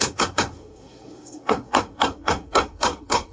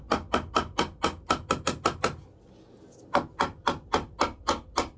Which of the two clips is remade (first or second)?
first